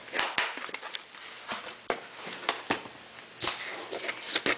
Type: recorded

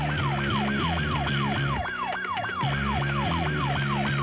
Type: recorded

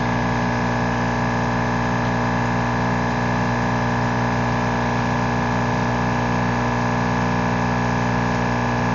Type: recorded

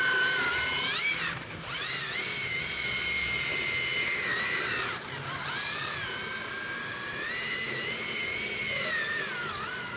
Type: recorded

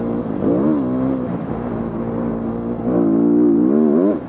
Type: recorded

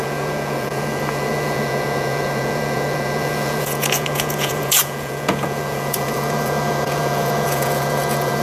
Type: remade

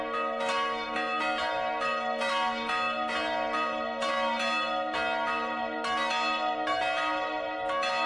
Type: recorded